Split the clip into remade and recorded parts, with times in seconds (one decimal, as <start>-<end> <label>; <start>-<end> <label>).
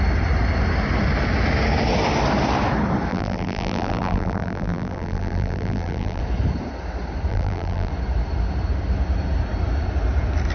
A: 0.0-3.1 recorded; 3.1-6.2 remade; 6.2-7.3 recorded; 7.3-7.9 remade; 7.9-10.5 recorded